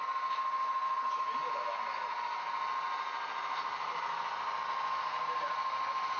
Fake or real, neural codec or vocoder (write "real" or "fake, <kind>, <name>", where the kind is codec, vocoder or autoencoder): real